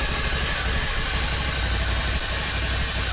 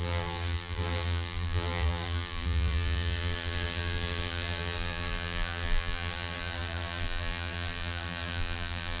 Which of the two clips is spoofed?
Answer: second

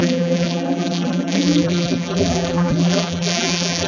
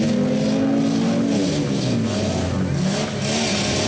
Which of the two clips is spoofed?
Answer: first